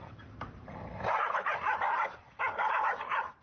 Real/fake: fake